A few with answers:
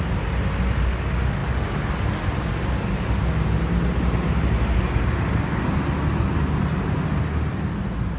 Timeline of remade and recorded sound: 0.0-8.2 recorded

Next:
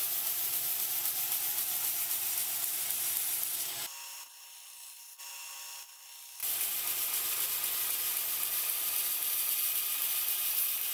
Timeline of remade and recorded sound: 0.0-1.0 remade; 1.0-10.9 recorded

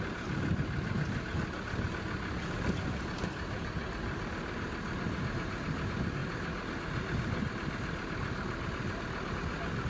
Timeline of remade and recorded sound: 0.0-9.9 recorded

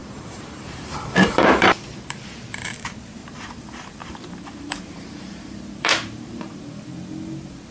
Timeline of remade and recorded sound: 0.0-2.5 remade; 2.5-3.2 recorded; 3.2-6.8 remade; 6.8-7.7 recorded

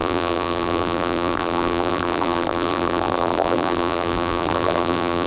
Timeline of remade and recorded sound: 0.0-5.3 remade

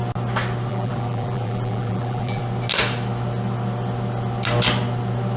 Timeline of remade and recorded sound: 0.0-0.7 recorded; 0.7-2.4 remade; 2.4-5.4 recorded

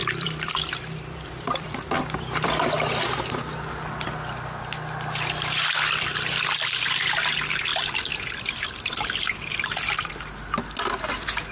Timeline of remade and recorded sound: 0.0-3.0 remade; 3.0-7.7 recorded; 7.7-10.1 remade; 10.1-11.5 recorded

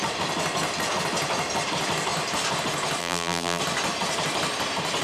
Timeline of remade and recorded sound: 0.0-3.0 recorded; 3.0-3.6 remade; 3.6-5.0 recorded